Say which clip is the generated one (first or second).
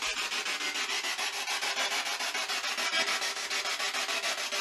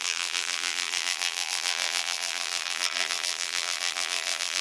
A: second